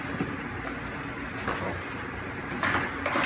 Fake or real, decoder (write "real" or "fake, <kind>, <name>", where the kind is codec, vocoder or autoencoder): real